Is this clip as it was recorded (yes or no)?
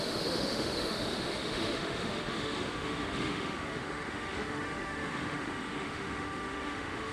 no